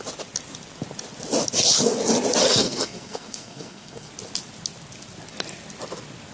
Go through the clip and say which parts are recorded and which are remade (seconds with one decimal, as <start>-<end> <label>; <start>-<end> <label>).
0.0-2.4 recorded; 2.4-4.1 remade; 4.1-6.3 recorded

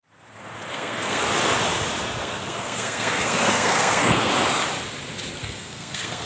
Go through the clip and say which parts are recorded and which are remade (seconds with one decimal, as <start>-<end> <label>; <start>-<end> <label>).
0.0-0.7 recorded; 0.7-1.2 remade; 1.2-2.2 recorded; 2.2-4.3 remade; 4.3-5.4 recorded; 5.4-6.3 remade

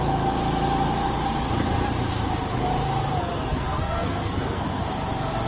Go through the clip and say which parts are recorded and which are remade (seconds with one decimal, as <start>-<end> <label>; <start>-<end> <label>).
0.0-3.2 recorded; 3.2-4.8 remade; 4.8-5.5 recorded

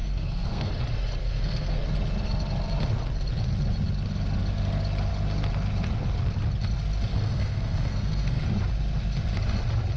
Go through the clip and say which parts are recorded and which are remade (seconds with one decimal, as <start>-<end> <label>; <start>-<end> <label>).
0.0-0.7 remade; 0.7-1.2 recorded; 1.2-1.8 remade; 1.8-7.1 recorded; 7.1-8.4 remade; 8.4-10.0 recorded

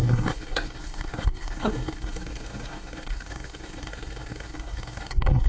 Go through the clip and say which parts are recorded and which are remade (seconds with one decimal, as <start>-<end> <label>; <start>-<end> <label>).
0.0-5.5 remade